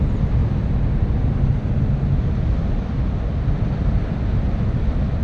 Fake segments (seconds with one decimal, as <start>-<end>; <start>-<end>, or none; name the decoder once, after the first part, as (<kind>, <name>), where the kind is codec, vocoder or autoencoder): 0.4-1.5 (vocoder, BigVGAN v2)